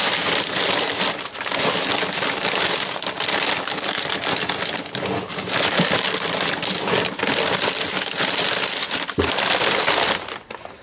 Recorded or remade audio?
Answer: recorded